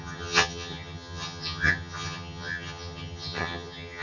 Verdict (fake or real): fake